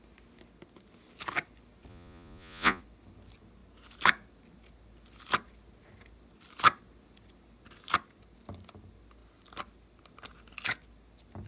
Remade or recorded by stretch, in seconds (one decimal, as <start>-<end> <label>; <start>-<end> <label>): 0.0-1.9 recorded; 1.9-2.8 remade; 2.8-11.5 recorded